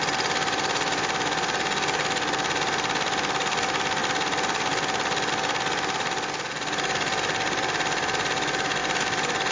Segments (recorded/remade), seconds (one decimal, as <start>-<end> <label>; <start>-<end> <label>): 0.0-4.0 recorded; 4.0-5.3 remade; 5.3-8.8 recorded; 8.8-9.5 remade